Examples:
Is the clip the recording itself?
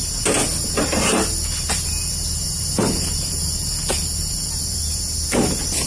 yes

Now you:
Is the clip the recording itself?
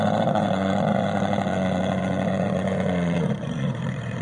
no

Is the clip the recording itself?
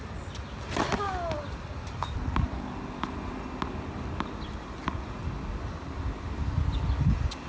yes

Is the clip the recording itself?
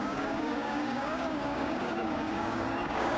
no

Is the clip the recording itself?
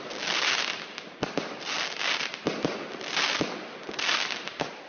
yes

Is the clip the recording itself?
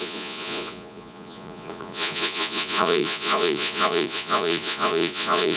no